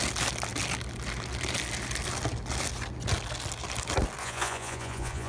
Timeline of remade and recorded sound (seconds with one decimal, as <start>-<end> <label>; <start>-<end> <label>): 0.0-4.2 recorded; 4.2-5.3 remade